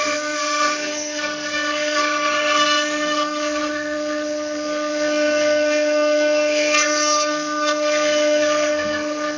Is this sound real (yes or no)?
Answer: no